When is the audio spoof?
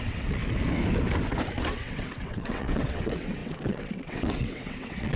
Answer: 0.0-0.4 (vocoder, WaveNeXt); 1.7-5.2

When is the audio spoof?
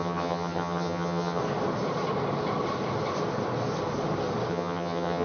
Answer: 0.0-1.4 (vocoder, HiFi-GAN); 4.5-5.2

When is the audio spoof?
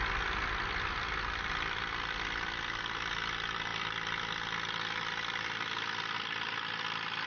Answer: none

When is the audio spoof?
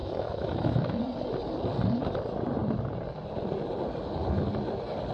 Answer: 0.0-1.0 (autoencoder, DAC-VAE)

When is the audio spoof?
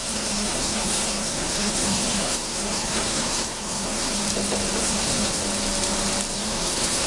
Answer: 0.0-4.2 (codec, SNAC); 4.8-5.4; 6.3-7.1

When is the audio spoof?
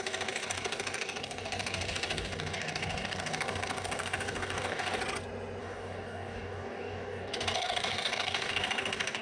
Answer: 0.0-5.0 (codec, DAC); 5.6-9.2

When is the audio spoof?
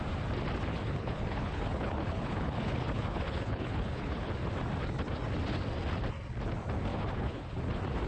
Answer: 0.7-4.3 (codec, HILCodec); 6.9-7.4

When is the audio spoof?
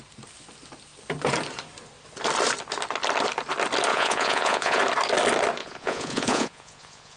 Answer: 3.9-4.8 (vocoder, Vocos); 5.6-7.2